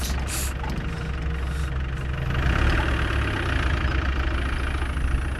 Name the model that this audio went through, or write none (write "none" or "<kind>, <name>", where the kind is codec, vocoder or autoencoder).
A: none